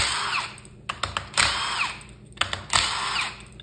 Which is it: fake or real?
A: real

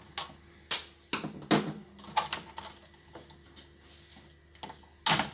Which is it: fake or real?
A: real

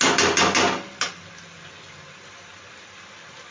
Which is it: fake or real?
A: real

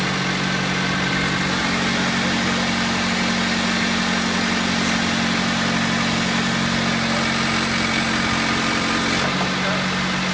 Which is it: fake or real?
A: real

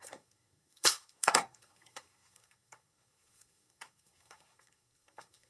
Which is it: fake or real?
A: fake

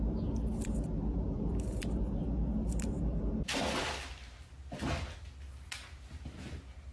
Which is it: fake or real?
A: real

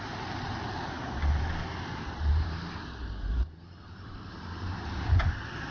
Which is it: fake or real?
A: fake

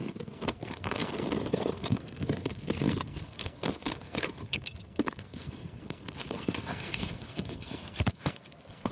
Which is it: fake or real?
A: fake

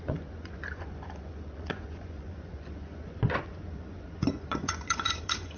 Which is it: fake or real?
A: fake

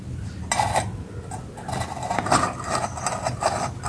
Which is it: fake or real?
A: real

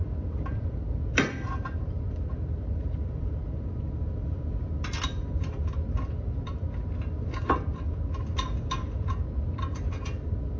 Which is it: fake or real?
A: fake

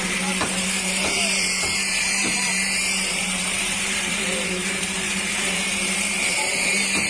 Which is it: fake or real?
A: fake